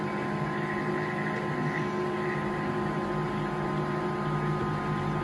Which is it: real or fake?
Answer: real